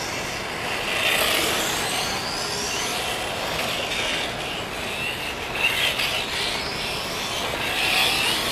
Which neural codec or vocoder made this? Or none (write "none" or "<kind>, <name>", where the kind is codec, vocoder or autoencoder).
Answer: none